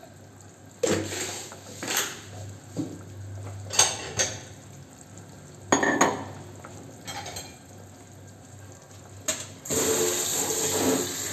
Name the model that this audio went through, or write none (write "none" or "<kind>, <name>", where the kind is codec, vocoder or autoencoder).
none